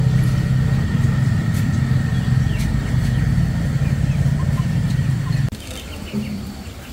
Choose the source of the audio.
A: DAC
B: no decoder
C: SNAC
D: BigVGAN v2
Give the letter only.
B